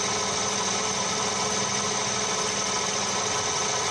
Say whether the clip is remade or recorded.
recorded